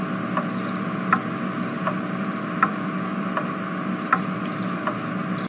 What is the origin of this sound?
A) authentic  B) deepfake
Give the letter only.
A